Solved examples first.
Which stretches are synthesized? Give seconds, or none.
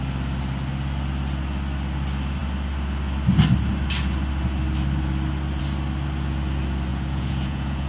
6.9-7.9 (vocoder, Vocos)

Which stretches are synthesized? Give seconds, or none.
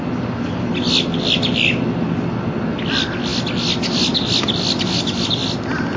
none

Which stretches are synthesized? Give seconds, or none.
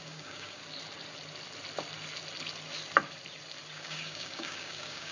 0.0-0.6 (codec, DAC); 3.7-5.1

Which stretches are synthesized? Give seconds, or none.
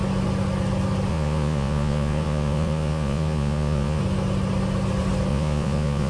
1.1-4.0 (vocoder, Vocos); 5.3-6.1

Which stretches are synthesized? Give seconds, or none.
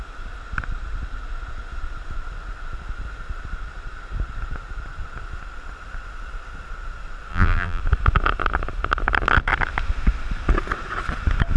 7.3-7.8 (vocoder, BigVGAN v2)